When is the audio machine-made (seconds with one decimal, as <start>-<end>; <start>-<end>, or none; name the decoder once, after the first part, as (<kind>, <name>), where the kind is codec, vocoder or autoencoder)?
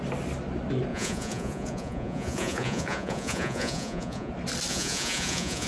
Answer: 0.9-4.3 (vocoder, Vocos); 4.7-5.7